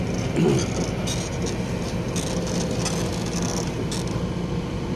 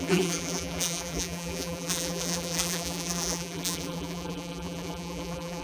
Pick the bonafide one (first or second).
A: first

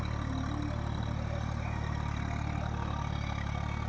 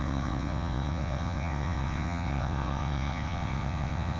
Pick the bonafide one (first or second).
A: first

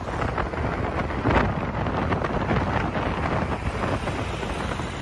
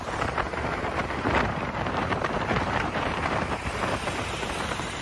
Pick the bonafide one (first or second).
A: first